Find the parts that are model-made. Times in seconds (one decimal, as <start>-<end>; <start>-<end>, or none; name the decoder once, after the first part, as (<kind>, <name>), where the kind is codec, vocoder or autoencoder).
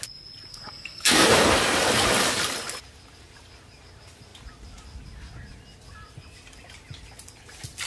0.5-1.3 (codec, SNAC)